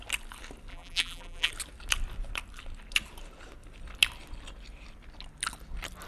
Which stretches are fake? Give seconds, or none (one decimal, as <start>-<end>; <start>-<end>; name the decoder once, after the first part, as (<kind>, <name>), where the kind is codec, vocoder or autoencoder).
0.7-1.5 (vocoder, BigVGAN v2)